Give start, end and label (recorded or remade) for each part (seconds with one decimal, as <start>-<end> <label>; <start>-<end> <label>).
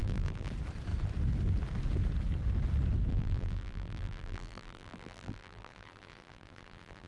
0.0-0.5 remade; 0.5-3.1 recorded; 3.1-7.1 remade